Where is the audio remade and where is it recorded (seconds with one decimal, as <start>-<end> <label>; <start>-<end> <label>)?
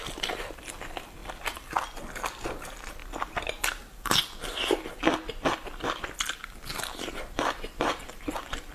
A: 0.0-3.0 recorded; 3.0-3.8 remade; 3.8-6.7 recorded; 6.7-8.7 remade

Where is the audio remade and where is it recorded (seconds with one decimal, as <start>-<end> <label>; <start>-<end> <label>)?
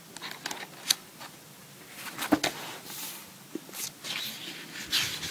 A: 0.0-1.1 recorded; 1.1-4.3 remade; 4.3-5.3 recorded